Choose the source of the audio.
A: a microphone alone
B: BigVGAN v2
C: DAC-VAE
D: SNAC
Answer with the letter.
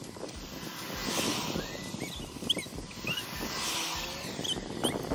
A